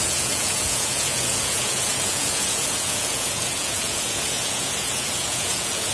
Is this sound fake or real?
fake